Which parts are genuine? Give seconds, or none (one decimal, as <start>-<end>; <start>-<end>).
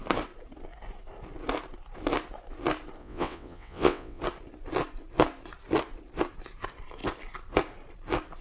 0.0-3.0; 4.2-8.4